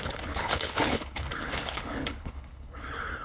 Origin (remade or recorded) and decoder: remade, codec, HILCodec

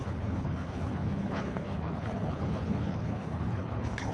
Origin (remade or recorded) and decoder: remade, codec, HILCodec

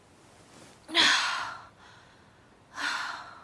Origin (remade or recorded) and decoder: recorded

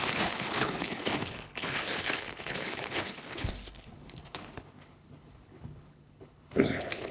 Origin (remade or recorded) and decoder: remade, codec, HILCodec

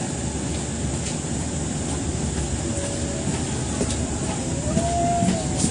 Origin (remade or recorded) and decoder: recorded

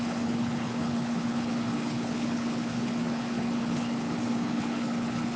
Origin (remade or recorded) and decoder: remade, codec, HILCodec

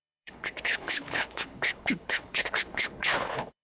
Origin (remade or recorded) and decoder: remade, codec, HILCodec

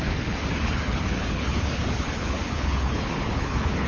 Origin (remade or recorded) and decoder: remade, codec, HILCodec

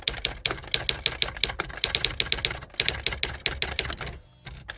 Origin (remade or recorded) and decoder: recorded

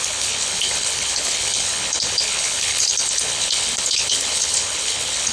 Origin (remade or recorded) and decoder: remade, codec, HILCodec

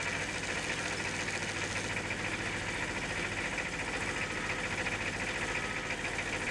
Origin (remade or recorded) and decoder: recorded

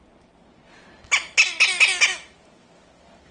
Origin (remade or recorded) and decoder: recorded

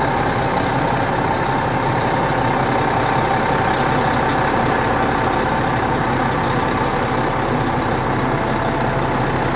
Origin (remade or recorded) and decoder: recorded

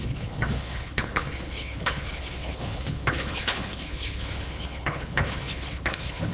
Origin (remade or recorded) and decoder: remade, codec, HILCodec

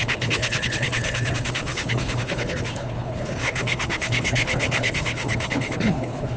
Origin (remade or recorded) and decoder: remade, codec, HILCodec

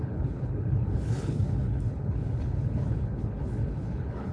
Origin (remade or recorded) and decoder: remade, codec, HILCodec